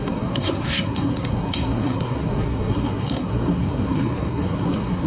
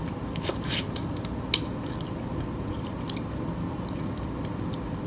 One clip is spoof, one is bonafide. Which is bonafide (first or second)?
second